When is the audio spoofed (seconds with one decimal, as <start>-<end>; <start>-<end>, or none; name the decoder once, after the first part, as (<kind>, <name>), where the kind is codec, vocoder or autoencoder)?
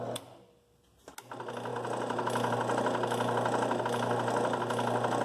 none